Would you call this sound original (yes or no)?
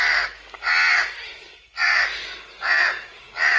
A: yes